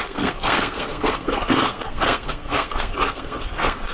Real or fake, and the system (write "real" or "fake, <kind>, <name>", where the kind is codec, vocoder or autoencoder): fake, codec, SNAC